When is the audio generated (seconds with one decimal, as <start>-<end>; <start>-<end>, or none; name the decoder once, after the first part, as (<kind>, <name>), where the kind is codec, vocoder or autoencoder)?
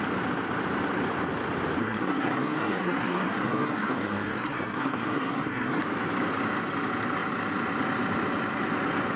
1.8-5.8 (codec, SNAC)